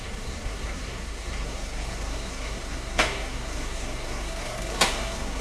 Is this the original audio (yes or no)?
no